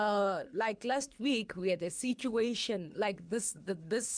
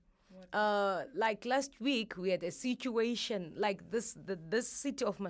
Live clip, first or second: second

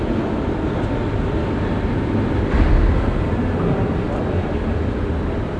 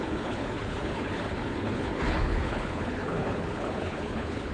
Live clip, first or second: first